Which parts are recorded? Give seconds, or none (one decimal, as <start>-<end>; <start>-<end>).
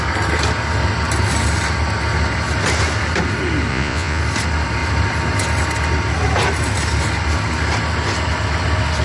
0.0-3.7; 4.2-9.0